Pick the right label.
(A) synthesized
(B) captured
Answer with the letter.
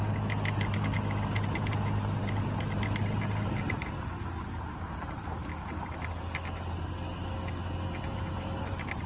B